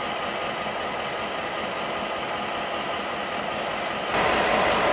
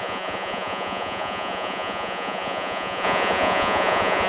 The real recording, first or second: first